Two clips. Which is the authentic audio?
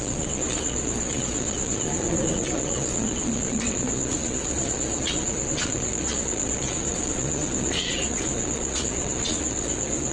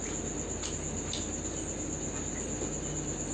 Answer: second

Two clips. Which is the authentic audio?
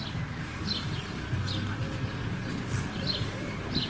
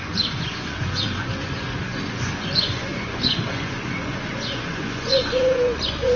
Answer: first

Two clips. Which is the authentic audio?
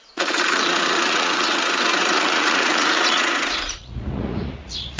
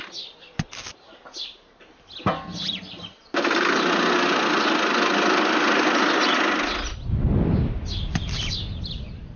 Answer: second